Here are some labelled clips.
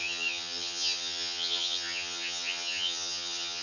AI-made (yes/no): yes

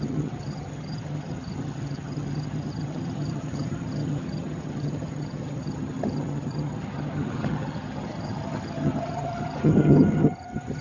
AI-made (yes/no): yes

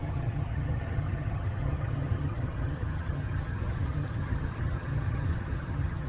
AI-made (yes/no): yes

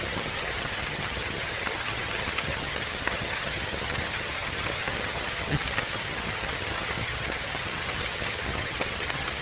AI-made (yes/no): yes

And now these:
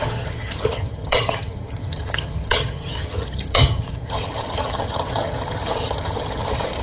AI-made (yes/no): yes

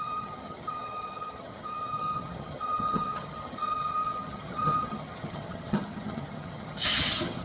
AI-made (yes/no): yes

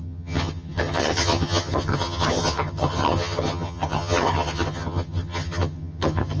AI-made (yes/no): yes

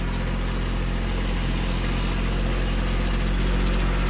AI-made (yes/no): no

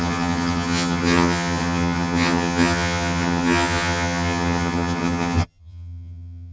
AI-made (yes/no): yes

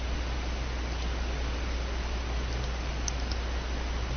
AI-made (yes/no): no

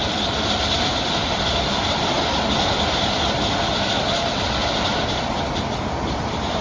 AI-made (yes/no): no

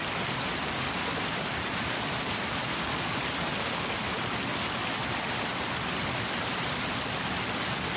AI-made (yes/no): no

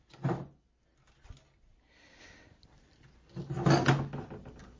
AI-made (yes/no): no